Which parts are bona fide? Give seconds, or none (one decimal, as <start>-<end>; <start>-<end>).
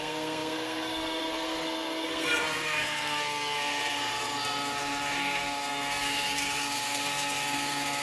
none